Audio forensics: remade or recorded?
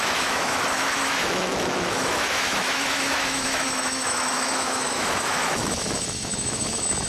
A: remade